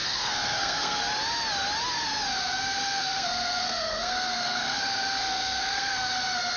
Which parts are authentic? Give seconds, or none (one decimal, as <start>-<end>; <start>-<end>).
1.0-2.4; 6.1-6.6